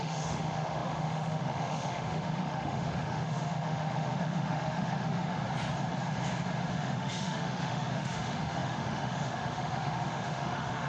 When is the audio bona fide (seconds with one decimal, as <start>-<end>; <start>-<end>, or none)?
5.4-6.7